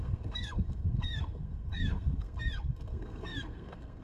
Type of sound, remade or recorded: remade